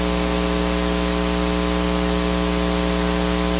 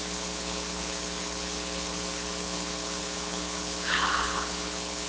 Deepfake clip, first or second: second